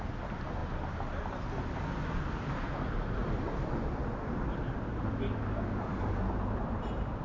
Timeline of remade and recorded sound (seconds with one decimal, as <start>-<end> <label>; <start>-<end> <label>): 0.0-0.6 remade; 0.6-2.5 recorded; 2.5-3.2 remade; 3.2-5.9 recorded; 5.9-7.2 remade